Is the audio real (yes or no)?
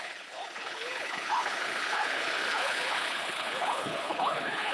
no